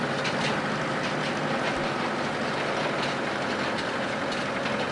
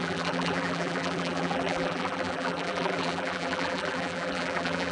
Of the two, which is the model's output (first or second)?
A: second